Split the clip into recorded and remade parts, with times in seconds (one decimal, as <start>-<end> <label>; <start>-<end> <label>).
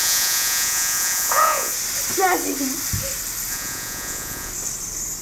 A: 0.0-1.7 remade; 1.7-3.5 recorded; 3.5-4.5 remade; 4.5-5.2 recorded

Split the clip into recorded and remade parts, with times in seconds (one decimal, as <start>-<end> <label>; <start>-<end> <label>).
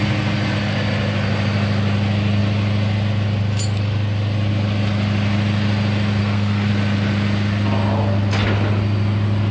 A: 0.0-6.2 recorded; 6.2-6.7 remade; 6.7-9.5 recorded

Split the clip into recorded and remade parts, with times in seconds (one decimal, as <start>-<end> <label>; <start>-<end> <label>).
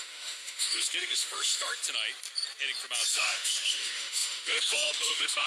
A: 0.0-1.8 remade; 1.8-3.1 recorded; 3.1-5.5 remade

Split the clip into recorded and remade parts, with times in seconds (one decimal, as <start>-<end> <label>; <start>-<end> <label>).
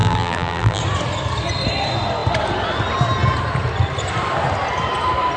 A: 0.0-0.8 remade; 0.8-5.4 recorded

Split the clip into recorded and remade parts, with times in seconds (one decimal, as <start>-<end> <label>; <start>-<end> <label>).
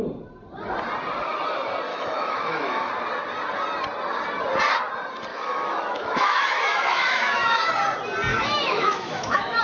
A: 0.0-1.9 recorded; 1.9-2.9 remade; 2.9-5.3 recorded; 5.3-7.7 remade; 7.7-8.3 recorded; 8.3-9.6 remade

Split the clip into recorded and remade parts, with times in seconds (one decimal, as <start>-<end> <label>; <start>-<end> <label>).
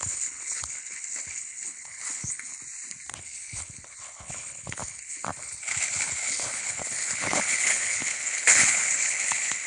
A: 0.0-2.5 remade; 2.5-3.2 recorded; 3.2-9.7 remade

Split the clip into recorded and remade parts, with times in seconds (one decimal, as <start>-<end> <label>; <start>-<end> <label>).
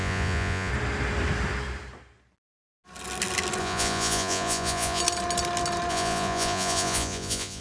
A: 0.0-0.7 remade; 0.7-3.6 recorded; 3.6-5.0 remade; 5.0-5.9 recorded; 5.9-7.6 remade